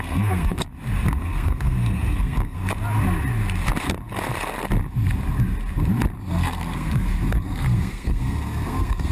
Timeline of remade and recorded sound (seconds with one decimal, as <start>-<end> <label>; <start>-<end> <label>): 0.0-0.6 remade; 0.6-1.2 recorded; 1.2-2.6 remade; 2.6-6.3 recorded; 6.3-9.1 remade